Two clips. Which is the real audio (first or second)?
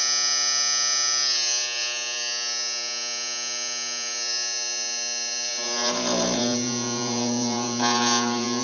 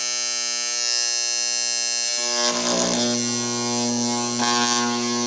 second